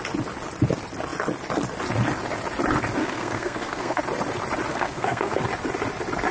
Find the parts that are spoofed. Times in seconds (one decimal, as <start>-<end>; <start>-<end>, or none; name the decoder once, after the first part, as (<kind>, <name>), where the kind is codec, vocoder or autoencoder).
3.0-4.0 (codec, SNAC); 4.7-5.4